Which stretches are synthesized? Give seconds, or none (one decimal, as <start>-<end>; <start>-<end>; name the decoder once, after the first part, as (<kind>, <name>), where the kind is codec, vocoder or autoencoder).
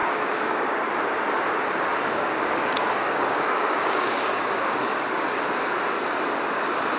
0.0-0.8 (codec, DAC); 1.9-5.4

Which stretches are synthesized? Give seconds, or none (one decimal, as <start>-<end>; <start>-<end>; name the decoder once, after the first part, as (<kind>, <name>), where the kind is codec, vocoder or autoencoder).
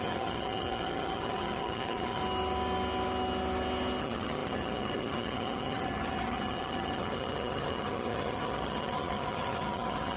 0.0-2.2 (vocoder, HiFi-GAN); 4.0-10.2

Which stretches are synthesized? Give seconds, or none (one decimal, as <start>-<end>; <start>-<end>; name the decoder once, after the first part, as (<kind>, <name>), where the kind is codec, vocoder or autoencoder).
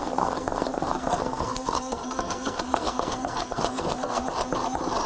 0.0-4.2 (codec, SNAC)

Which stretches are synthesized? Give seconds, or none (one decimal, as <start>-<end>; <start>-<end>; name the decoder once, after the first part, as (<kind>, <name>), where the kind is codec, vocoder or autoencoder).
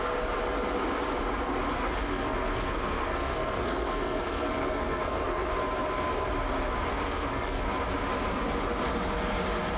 2.1-5.5 (codec, SNAC); 6.9-7.6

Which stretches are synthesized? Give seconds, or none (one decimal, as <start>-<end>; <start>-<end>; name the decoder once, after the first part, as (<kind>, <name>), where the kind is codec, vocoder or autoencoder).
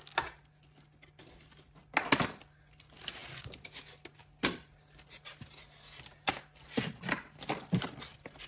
none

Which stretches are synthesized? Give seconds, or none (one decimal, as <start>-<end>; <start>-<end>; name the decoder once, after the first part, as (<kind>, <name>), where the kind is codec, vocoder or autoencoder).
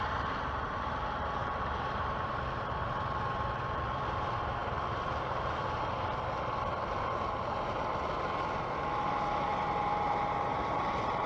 1.4-2.4 (vocoder, BigVGAN v2)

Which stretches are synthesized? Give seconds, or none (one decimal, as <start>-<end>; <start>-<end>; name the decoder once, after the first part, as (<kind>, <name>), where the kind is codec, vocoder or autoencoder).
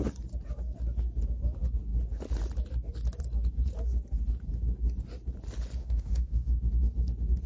5.8-6.6 (autoencoder, DAC-VAE)